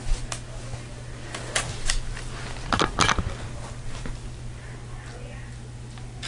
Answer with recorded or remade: recorded